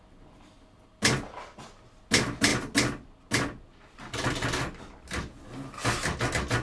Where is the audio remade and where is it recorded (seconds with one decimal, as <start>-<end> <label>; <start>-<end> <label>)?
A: 0.0-6.6 recorded

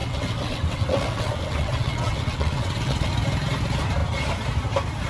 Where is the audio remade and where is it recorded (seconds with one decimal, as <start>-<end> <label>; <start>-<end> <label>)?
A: 0.0-3.1 remade; 3.1-5.1 recorded

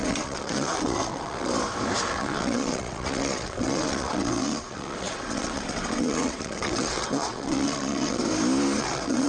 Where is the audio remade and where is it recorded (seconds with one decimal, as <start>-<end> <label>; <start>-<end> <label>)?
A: 0.0-1.5 remade; 1.5-2.1 recorded; 2.1-8.2 remade; 8.2-8.8 recorded; 8.8-9.3 remade